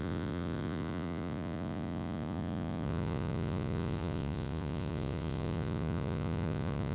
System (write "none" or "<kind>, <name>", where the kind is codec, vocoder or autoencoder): vocoder, Vocos